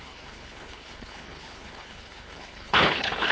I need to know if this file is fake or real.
fake